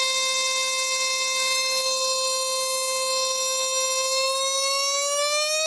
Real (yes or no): no